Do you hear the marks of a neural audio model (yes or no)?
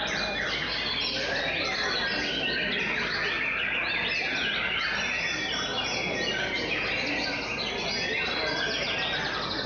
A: no